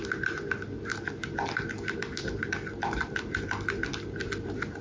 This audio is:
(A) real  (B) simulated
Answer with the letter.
A